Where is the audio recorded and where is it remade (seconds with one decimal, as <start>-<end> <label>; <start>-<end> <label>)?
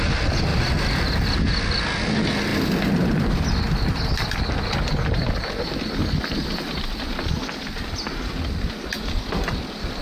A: 0.0-0.5 recorded; 0.5-1.2 remade; 1.2-10.0 recorded